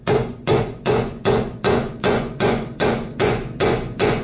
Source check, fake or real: fake